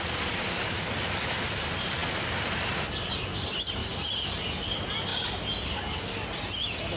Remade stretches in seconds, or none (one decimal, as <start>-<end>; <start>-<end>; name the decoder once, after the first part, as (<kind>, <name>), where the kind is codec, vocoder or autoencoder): none